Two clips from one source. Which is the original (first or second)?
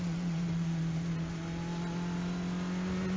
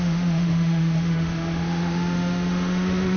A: first